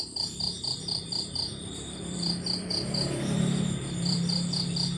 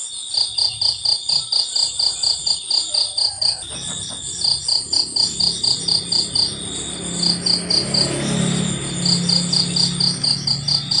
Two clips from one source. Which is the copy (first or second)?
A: first